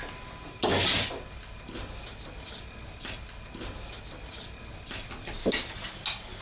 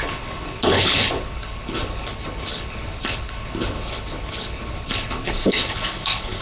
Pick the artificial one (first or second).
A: second